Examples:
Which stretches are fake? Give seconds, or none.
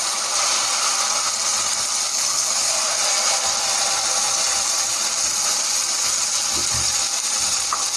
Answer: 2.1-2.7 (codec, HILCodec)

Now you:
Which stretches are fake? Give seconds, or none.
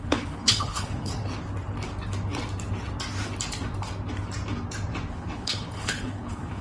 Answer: 0.0-1.1 (codec, HILCodec); 5.1-6.6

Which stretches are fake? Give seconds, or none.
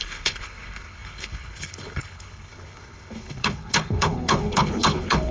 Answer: 0.0-5.3 (codec, HILCodec)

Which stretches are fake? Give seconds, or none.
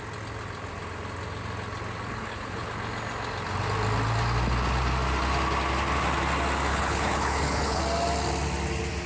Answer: 2.1-2.7 (codec, HILCodec); 6.7-7.8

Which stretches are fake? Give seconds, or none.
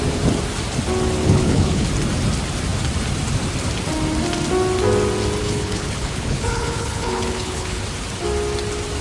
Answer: 1.2-1.9 (codec, HILCodec); 5.4-7.8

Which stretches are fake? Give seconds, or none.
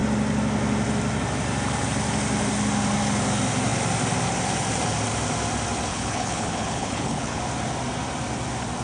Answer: 5.9-7.4 (codec, HILCodec)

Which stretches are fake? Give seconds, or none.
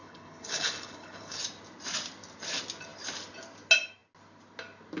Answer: 0.0-1.4 (codec, HILCodec)